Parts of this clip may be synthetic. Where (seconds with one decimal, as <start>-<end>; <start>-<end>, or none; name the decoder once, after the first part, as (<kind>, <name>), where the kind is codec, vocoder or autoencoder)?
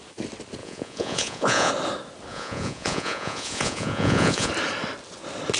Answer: 0.6-1.7 (vocoder, Vocos); 2.3-4.5